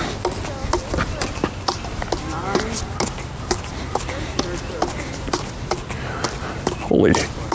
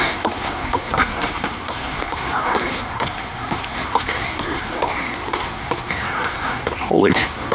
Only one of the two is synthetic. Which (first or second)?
second